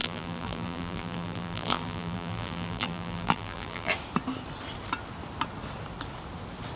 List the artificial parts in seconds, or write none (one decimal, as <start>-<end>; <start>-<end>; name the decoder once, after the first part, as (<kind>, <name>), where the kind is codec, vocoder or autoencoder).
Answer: 0.0-3.9 (vocoder, BigVGAN v2)